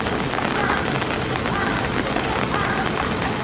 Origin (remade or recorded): recorded